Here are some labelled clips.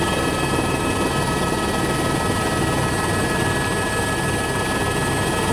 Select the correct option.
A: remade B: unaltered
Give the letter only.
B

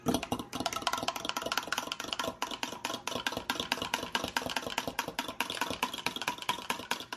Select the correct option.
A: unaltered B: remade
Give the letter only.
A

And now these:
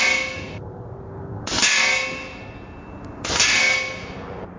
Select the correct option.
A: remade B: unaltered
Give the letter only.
B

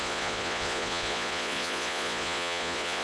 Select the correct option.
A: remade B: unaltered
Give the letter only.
A